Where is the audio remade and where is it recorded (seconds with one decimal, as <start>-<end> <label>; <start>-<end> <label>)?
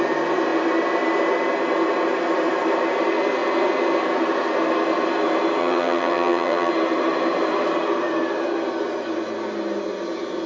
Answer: 0.0-5.6 recorded; 5.6-6.7 remade; 6.7-10.5 recorded